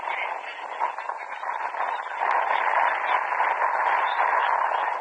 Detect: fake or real real